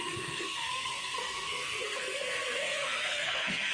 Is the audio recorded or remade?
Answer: remade